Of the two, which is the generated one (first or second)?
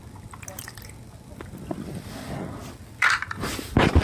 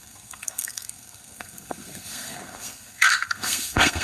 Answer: second